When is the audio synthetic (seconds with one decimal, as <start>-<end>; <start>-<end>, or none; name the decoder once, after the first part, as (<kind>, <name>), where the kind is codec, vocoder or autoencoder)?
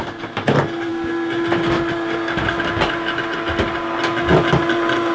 none